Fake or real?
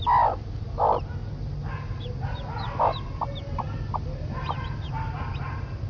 real